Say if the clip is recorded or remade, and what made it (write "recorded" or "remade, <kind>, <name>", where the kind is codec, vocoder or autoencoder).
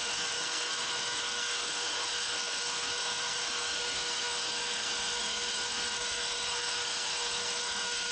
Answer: remade, codec, SNAC